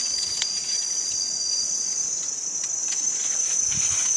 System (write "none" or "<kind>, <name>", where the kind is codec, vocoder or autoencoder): vocoder, Vocos